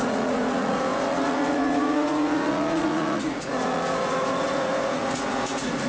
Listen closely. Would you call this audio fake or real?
fake